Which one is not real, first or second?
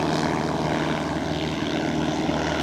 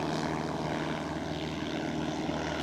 first